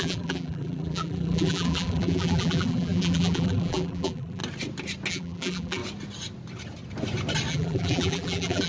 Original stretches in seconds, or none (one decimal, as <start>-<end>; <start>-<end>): 4.4-5.1; 5.8-7.5